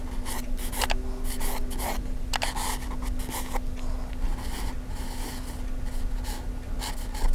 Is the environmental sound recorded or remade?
recorded